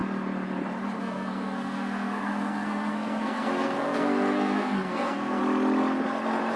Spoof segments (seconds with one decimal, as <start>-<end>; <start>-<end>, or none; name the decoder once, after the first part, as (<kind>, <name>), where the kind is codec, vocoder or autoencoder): 1.0-5.4 (codec, SNAC)